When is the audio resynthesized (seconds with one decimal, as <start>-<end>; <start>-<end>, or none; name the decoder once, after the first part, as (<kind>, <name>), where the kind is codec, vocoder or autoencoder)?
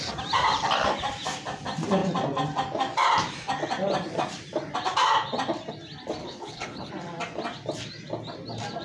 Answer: 6.2-6.9 (codec, HILCodec)